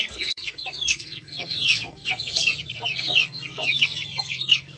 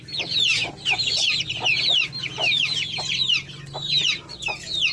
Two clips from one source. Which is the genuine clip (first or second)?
second